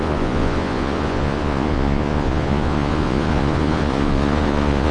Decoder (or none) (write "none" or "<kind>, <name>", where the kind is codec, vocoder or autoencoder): vocoder, Vocos